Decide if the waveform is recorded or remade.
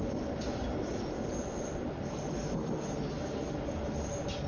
recorded